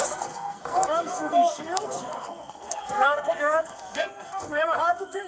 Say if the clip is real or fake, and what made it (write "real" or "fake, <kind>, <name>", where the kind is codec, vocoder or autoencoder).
fake, codec, SNAC